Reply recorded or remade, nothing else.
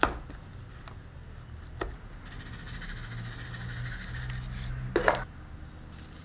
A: recorded